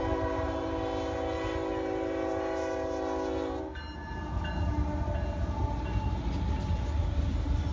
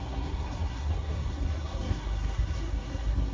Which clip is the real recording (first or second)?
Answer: first